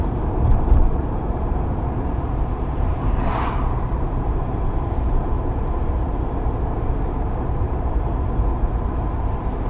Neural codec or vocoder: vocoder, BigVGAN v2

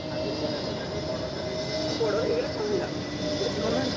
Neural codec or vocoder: none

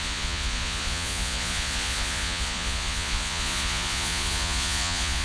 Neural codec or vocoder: vocoder, Vocos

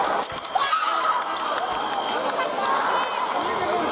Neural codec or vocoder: none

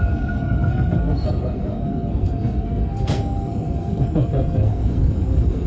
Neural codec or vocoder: codec, SNAC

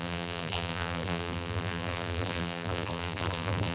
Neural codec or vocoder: vocoder, BigVGAN v2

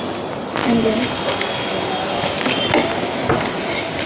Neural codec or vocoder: none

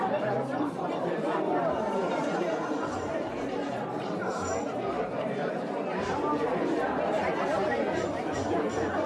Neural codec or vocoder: vocoder, BigVGAN v2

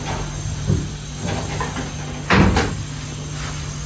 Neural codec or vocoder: none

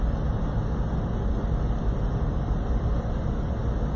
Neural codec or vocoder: none